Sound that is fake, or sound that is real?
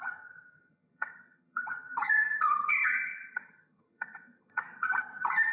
fake